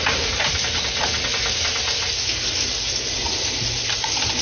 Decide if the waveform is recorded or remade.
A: recorded